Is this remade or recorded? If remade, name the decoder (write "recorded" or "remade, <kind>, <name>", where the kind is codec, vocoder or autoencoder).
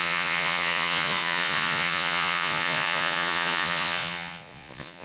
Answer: remade, vocoder, Vocos